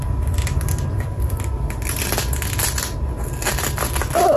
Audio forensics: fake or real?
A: real